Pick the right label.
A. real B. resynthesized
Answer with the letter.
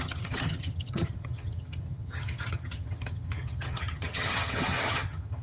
B